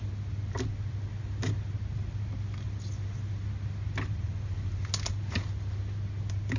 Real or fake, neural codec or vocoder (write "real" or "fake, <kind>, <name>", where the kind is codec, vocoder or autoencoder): real